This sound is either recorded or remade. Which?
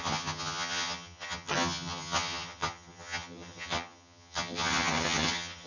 remade